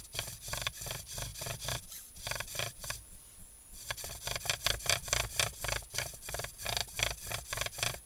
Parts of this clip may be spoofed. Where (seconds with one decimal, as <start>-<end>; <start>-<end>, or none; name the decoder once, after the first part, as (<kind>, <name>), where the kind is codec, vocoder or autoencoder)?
none